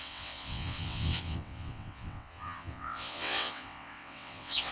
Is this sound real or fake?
fake